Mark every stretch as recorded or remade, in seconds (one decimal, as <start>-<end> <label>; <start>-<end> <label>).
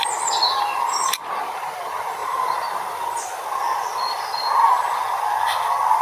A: 0.0-6.0 recorded